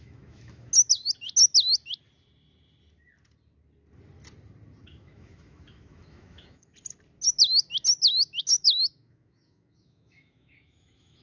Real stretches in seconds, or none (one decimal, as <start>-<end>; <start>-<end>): 0.7-4.8; 6.7-8.4